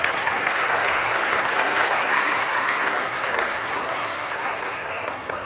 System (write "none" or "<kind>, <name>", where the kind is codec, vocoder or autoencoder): codec, SNAC